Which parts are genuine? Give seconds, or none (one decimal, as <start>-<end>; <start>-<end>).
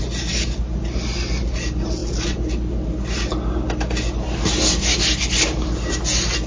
0.0-6.5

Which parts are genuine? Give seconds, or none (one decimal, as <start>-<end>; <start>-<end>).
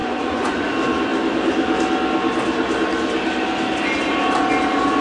0.7-5.0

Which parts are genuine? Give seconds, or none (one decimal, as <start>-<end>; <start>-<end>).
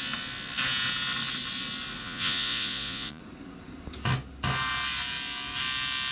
0.0-2.0; 3.2-6.1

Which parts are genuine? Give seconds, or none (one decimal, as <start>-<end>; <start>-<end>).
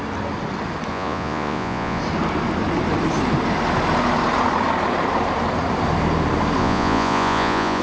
0.0-0.9; 2.0-6.6